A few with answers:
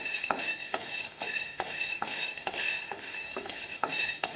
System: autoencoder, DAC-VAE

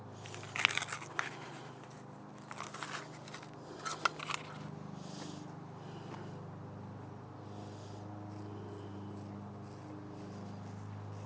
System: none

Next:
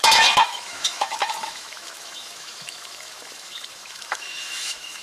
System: autoencoder, DAC-VAE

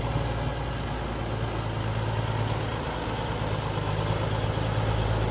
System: none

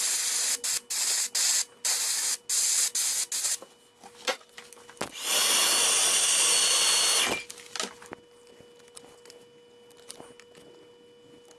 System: none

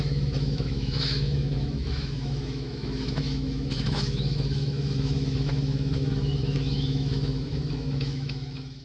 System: autoencoder, DAC-VAE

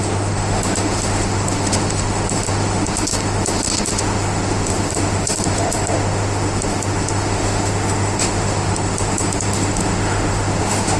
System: autoencoder, DAC-VAE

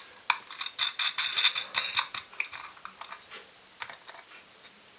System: none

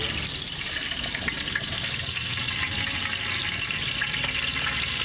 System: none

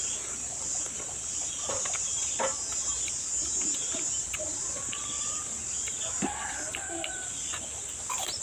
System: none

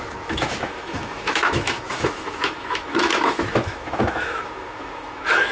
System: autoencoder, DAC-VAE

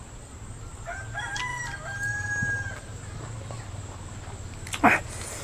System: none